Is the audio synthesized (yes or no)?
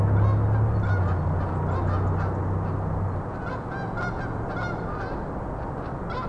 no